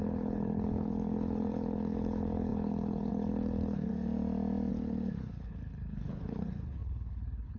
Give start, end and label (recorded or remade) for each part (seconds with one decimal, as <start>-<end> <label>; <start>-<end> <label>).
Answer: 0.0-3.9 remade; 3.9-4.7 recorded; 4.7-7.6 remade